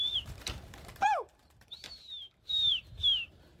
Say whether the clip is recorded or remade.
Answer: remade